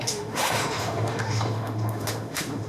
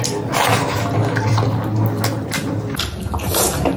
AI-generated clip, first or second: first